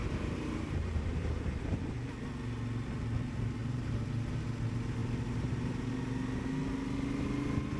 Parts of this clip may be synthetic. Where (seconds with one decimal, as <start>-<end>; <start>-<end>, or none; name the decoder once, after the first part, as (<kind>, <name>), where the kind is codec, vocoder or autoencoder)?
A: 0.0-1.9 (vocoder, BigVGAN v2); 3.6-4.4; 5.0-5.9